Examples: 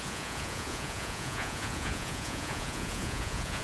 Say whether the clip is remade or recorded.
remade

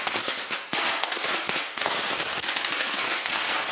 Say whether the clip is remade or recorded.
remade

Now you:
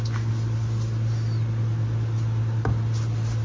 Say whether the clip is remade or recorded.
recorded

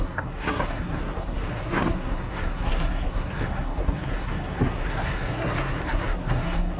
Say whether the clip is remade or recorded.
remade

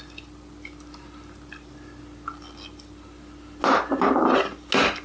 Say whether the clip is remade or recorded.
recorded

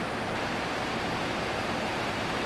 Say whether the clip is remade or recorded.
recorded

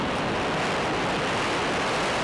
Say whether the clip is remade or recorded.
recorded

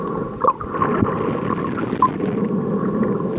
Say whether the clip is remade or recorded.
recorded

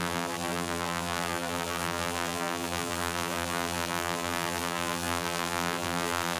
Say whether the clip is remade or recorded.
remade